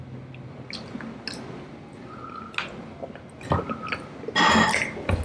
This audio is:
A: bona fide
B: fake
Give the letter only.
A